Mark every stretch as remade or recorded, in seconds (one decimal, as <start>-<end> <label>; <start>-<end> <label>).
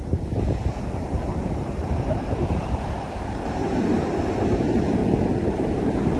0.0-3.6 remade; 3.6-4.5 recorded; 4.5-5.0 remade; 5.0-5.5 recorded; 5.5-6.2 remade